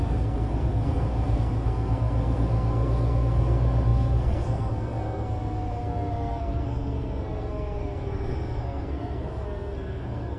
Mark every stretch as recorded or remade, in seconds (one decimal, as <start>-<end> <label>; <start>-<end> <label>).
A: 0.0-10.4 remade